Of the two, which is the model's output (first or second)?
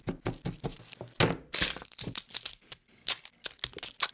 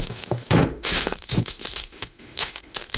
second